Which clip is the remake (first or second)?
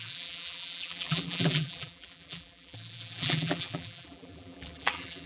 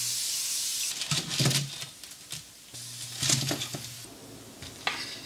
first